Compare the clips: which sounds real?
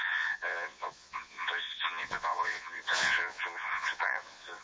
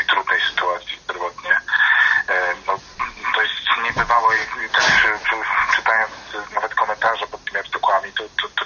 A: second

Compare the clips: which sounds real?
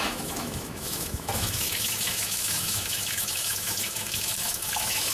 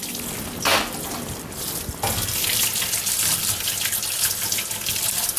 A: second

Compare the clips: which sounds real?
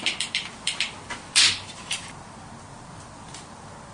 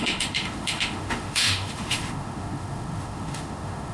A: first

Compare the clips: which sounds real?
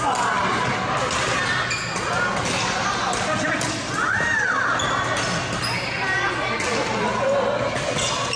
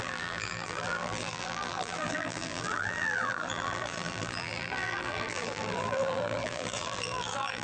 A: first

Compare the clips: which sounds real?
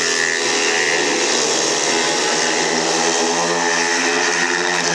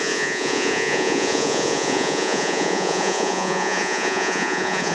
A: first